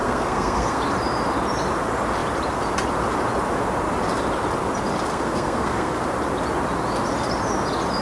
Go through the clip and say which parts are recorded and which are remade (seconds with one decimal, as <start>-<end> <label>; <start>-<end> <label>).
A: 0.0-0.8 remade; 0.8-5.1 recorded; 5.1-6.0 remade; 6.0-8.0 recorded